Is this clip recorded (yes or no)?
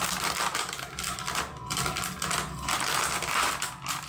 yes